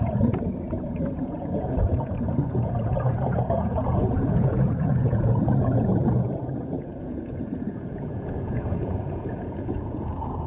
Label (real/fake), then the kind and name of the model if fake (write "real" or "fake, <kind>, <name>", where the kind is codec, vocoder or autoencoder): fake, vocoder, Vocos